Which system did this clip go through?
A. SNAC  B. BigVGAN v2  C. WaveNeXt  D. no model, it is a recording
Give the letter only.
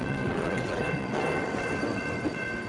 C